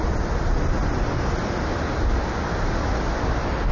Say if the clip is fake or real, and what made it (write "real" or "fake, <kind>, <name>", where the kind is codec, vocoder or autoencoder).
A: real